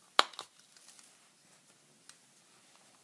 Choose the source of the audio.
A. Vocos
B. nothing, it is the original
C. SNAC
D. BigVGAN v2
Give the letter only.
B